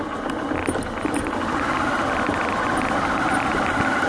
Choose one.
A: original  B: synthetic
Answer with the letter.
A